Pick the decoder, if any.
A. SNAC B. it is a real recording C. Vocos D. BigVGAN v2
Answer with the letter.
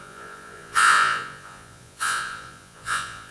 C